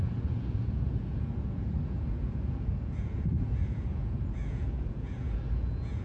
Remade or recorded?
remade